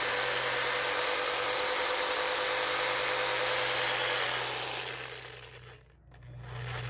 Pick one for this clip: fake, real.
real